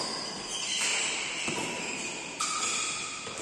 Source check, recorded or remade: recorded